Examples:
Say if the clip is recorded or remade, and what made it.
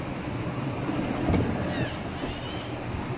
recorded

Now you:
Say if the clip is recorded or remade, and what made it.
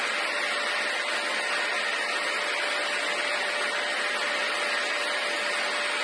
recorded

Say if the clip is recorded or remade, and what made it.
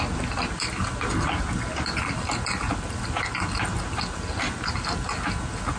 recorded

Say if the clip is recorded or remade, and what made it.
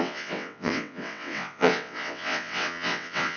remade, vocoder, WaveNeXt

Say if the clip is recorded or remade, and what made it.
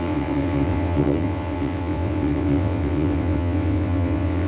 remade, vocoder, WaveNeXt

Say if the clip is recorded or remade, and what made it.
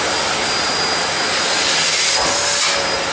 recorded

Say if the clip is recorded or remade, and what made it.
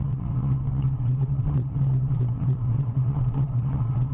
remade, vocoder, WaveNeXt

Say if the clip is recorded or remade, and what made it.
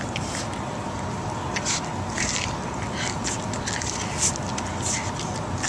recorded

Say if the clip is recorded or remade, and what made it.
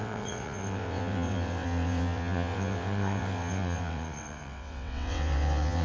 remade, vocoder, WaveNeXt